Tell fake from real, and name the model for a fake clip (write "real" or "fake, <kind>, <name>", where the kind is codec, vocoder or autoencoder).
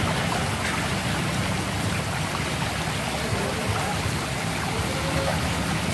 real